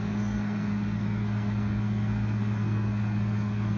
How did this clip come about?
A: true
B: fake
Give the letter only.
B